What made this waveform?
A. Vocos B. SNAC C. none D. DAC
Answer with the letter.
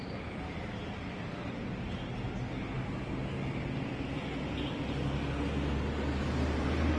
C